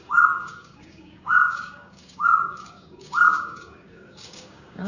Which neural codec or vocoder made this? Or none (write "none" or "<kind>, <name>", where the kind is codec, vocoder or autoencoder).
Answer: codec, DAC